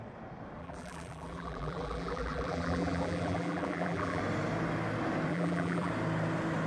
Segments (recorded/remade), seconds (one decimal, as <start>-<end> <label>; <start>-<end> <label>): 0.0-0.6 recorded; 0.6-4.2 remade; 4.2-5.3 recorded; 5.3-5.9 remade; 5.9-6.7 recorded